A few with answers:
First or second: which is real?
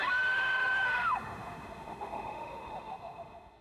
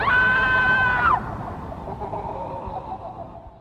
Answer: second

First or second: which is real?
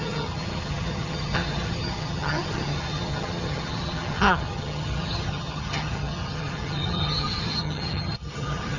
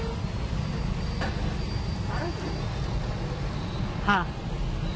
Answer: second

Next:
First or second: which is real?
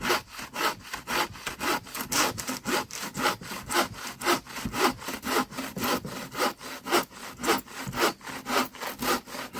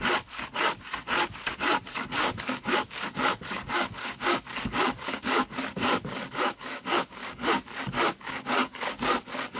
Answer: first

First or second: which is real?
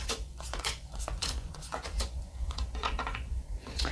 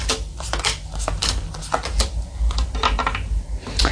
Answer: second